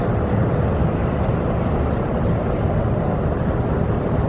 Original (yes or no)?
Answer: yes